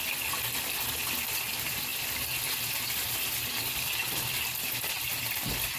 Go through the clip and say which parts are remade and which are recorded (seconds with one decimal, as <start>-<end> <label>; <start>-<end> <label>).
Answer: 0.0-5.8 recorded

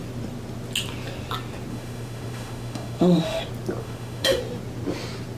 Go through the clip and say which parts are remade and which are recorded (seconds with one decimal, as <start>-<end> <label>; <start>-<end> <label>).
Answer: 0.0-1.7 recorded; 1.7-3.4 remade; 3.4-3.8 recorded; 3.8-4.4 remade; 4.4-5.4 recorded

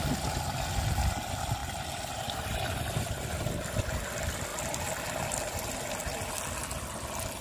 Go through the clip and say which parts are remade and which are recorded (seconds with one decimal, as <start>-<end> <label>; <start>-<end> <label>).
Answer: 0.0-7.4 recorded

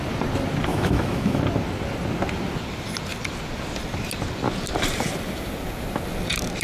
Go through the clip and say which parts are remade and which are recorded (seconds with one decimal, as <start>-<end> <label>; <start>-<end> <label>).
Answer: 0.0-0.7 recorded; 0.7-1.4 remade; 1.4-6.6 recorded

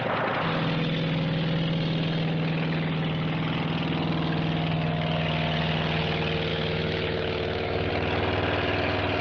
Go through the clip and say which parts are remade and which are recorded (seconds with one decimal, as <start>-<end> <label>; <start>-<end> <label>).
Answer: 0.0-6.5 recorded; 6.5-7.9 remade; 7.9-9.2 recorded

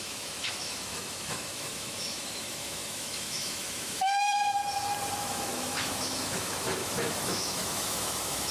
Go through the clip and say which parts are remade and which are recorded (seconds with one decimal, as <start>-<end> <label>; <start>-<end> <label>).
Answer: 0.0-4.6 remade; 4.6-5.2 recorded; 5.2-8.5 remade

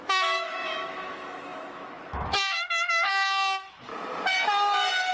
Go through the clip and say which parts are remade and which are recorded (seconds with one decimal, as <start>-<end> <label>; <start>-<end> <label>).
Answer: 0.0-3.9 remade; 3.9-5.1 recorded